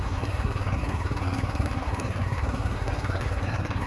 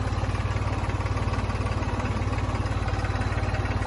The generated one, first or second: first